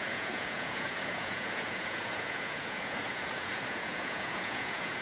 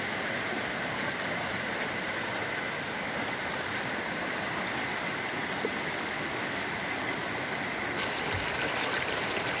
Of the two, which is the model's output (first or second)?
first